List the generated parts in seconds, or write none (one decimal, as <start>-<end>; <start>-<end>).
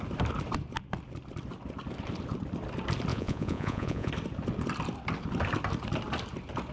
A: 3.1-4.1